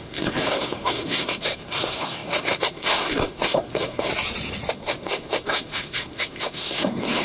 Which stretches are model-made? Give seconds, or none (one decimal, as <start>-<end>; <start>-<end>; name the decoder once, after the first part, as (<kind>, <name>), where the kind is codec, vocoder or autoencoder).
0.0-4.1 (codec, SNAC); 4.7-7.2